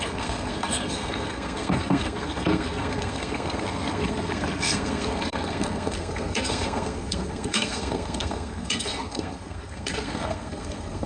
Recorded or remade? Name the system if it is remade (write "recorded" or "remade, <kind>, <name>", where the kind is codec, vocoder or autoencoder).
remade, codec, SNAC